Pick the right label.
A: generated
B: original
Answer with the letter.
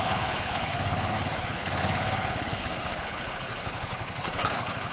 A